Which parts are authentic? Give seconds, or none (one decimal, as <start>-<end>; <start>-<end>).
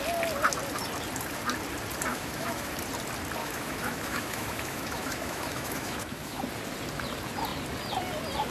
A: 0.0-2.1; 2.7-3.4; 6.4-8.5